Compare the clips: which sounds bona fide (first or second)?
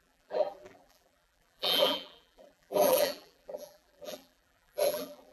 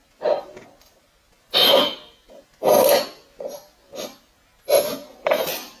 second